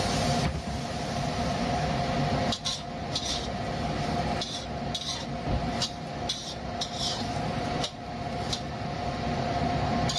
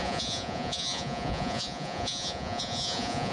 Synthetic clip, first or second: second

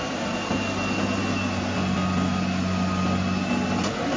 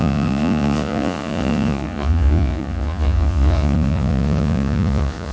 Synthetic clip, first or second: second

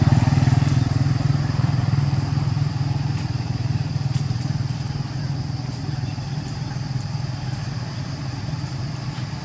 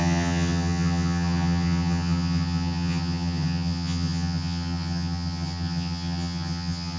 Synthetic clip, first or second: second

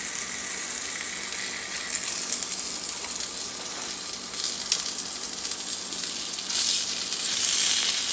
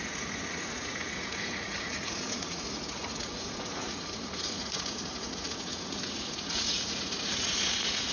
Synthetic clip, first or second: second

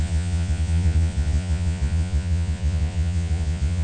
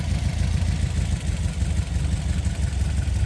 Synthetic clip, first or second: first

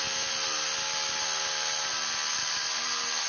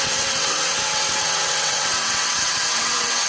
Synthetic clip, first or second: second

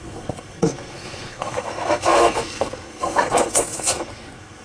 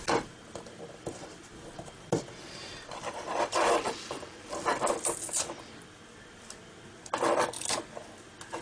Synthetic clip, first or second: first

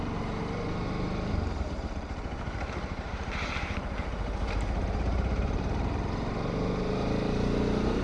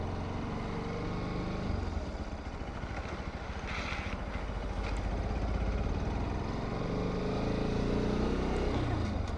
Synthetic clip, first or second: first